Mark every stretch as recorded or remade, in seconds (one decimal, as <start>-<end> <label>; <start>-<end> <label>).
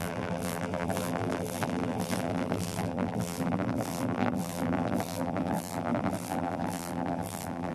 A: 0.0-7.7 remade